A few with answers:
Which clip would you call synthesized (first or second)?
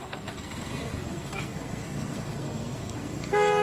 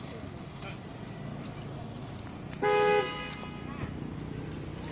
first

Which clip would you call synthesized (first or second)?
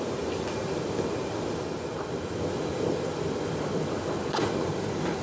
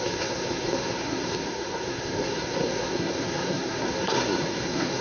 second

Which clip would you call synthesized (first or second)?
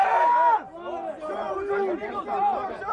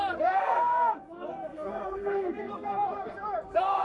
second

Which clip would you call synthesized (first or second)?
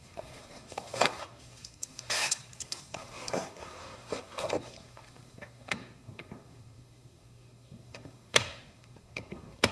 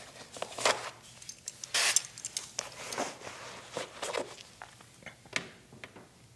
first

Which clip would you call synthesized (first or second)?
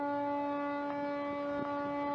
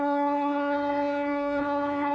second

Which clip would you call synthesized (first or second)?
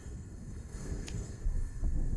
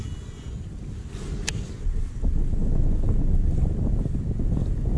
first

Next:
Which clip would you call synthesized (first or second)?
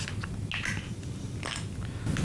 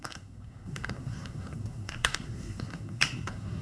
second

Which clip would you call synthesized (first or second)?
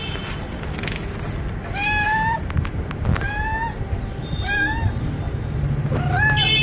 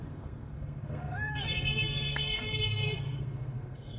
second